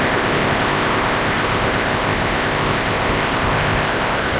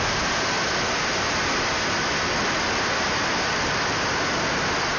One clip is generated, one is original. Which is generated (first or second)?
first